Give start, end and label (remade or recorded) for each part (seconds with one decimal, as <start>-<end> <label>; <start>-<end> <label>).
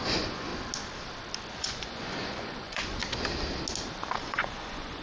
0.0-0.5 remade; 0.5-1.5 recorded; 1.5-3.0 remade; 3.0-4.2 recorded; 4.2-5.0 remade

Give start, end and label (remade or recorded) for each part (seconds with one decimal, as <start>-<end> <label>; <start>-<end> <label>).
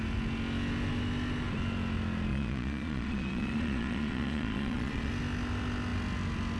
0.0-2.3 recorded; 2.3-5.1 remade; 5.1-6.6 recorded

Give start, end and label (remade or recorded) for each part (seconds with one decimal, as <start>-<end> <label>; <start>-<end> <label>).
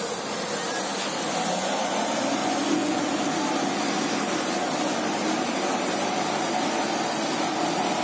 0.0-2.4 recorded; 2.4-3.1 remade; 3.1-8.0 recorded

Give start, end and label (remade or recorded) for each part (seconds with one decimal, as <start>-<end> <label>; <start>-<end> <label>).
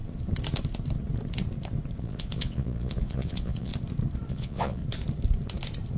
0.0-2.0 recorded; 2.0-3.7 remade; 3.7-4.3 recorded; 4.3-4.8 remade; 4.8-6.0 recorded